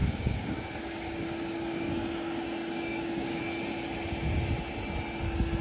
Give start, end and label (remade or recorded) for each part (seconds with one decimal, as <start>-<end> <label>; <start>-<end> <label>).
0.0-3.4 remade; 3.4-5.6 recorded